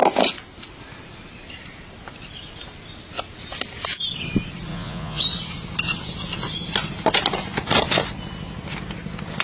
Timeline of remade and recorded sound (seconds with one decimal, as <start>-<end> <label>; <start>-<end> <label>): 0.0-4.7 recorded; 4.7-5.2 remade; 5.2-9.4 recorded

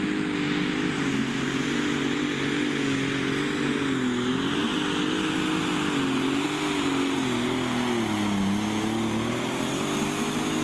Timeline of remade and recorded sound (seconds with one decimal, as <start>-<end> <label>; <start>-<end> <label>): 0.0-10.6 recorded

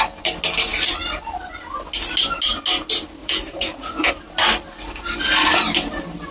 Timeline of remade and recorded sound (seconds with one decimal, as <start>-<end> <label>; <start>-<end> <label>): 0.0-3.2 recorded; 3.2-4.1 remade; 4.1-6.3 recorded

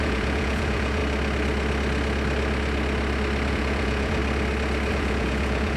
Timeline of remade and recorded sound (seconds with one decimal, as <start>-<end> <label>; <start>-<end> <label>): 0.0-1.0 remade; 1.0-3.5 recorded; 3.5-4.2 remade; 4.2-4.9 recorded; 4.9-5.8 remade

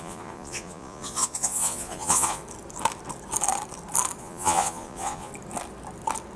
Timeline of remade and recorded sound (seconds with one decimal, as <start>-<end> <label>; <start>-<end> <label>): 0.0-2.4 remade; 2.4-4.2 recorded; 4.2-5.3 remade; 5.3-6.4 recorded

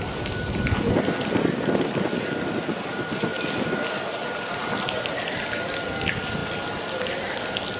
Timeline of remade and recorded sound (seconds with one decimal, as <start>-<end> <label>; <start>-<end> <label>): 0.0-7.8 recorded

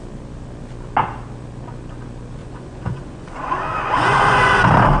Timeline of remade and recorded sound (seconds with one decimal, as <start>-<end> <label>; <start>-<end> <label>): 0.0-2.4 recorded; 2.4-4.6 remade; 4.6-5.0 recorded